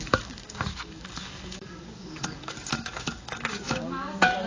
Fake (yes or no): yes